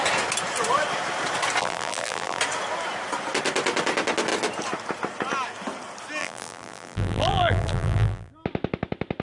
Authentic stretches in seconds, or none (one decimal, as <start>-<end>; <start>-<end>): 0.0-1.6; 2.4-6.2; 8.3-9.2